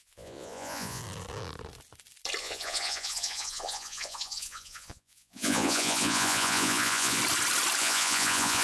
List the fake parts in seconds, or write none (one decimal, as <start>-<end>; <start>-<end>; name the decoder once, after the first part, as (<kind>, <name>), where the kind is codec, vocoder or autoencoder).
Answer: 0.0-1.0 (vocoder, Vocos); 2.4-7.2; 7.8-8.6